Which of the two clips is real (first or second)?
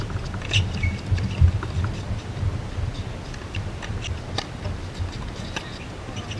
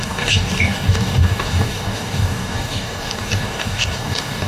first